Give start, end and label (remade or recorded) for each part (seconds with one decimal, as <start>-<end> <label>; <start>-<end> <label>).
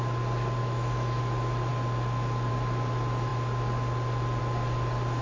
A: 0.0-0.6 recorded; 0.6-1.2 remade; 1.2-5.2 recorded